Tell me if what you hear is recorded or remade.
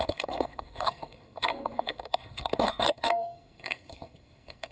remade